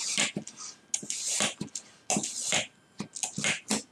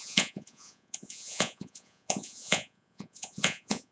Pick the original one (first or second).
first